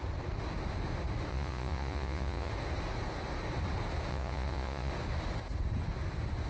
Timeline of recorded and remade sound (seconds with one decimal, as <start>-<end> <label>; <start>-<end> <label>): 0.0-1.3 recorded; 1.3-2.5 remade; 2.5-4.1 recorded; 4.1-4.9 remade; 4.9-6.5 recorded

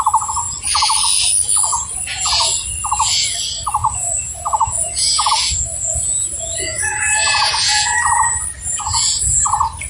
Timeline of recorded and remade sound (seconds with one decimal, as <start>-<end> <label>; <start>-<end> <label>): 0.0-1.7 recorded; 1.7-2.2 remade; 2.2-3.8 recorded; 3.8-5.3 remade; 5.3-5.9 recorded; 5.9-8.1 remade; 8.1-9.9 recorded

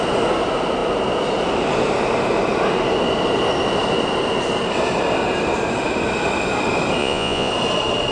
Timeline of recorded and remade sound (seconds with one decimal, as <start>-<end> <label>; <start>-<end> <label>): 0.0-7.0 recorded; 7.0-7.5 remade; 7.5-8.1 recorded

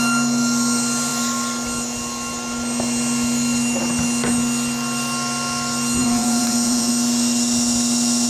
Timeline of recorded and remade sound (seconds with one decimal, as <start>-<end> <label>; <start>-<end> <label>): 0.0-6.0 recorded; 6.0-6.9 remade; 6.9-8.3 recorded

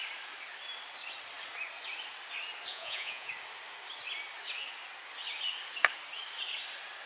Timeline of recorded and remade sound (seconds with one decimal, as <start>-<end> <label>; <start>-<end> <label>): 0.0-2.7 recorded; 2.7-3.3 remade; 3.3-7.1 recorded

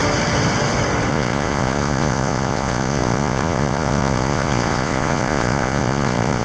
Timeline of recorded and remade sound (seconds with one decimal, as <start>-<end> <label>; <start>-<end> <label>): 0.0-1.1 recorded; 1.1-6.4 remade